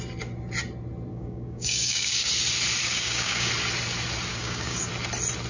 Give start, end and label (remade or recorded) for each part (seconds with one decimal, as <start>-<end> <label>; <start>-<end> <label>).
0.0-1.1 recorded; 1.1-2.3 remade; 2.3-2.8 recorded; 2.8-3.5 remade; 3.5-4.3 recorded; 4.3-4.9 remade; 4.9-5.5 recorded